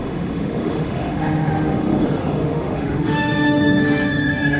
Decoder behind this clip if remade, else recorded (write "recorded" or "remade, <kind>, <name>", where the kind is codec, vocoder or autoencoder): remade, autoencoder, DAC-VAE